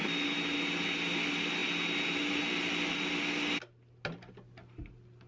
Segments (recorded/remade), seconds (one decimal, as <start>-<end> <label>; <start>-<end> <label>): 0.0-5.3 recorded